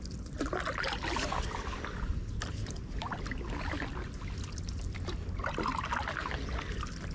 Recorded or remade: recorded